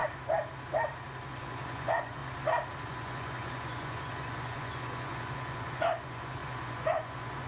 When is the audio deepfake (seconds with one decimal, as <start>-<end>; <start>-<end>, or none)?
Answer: 1.4-2.2; 2.8-7.5